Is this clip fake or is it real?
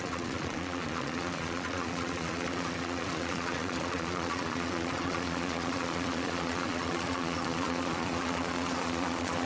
fake